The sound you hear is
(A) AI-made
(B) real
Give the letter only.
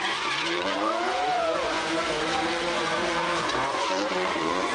A